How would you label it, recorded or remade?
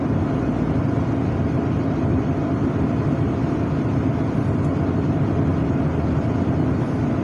recorded